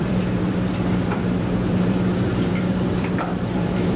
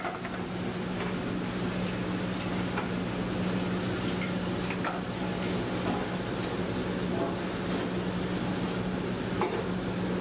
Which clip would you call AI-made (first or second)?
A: first